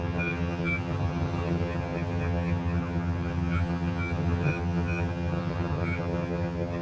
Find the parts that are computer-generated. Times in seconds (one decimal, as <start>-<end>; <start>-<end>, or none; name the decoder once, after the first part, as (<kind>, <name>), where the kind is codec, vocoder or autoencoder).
0.0-6.8 (vocoder, HiFi-GAN)

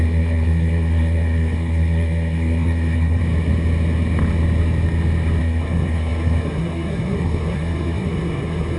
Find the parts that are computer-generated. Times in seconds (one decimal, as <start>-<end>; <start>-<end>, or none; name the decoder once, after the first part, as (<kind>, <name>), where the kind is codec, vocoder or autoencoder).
0.0-3.2 (codec, SNAC); 5.4-8.8

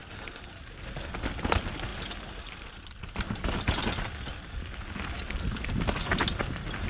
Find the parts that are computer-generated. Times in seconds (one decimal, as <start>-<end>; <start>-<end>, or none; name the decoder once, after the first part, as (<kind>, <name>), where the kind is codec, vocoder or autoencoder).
none

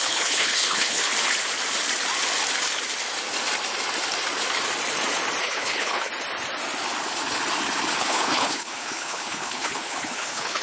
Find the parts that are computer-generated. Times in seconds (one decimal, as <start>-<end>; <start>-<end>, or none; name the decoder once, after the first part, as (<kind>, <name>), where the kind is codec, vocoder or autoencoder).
0.0-1.0 (codec, HILCodec); 5.4-6.1; 8.0-10.6

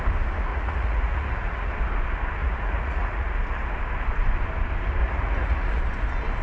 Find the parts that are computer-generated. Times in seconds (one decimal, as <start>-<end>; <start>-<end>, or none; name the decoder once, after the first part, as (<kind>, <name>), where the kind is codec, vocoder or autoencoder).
0.5-1.7 (vocoder, Vocos); 2.4-3.4; 5.0-5.8